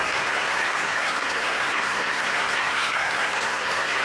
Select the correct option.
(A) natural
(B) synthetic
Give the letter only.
B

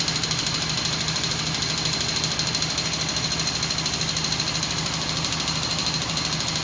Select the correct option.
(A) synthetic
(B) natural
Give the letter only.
B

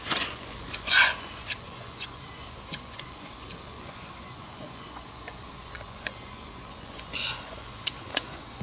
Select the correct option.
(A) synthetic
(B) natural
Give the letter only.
A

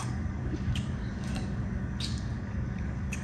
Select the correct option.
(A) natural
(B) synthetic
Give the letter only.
B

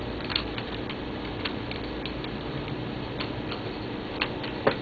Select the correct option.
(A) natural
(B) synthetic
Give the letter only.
A